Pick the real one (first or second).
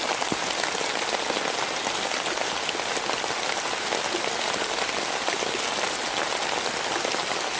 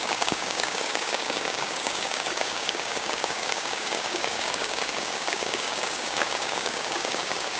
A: first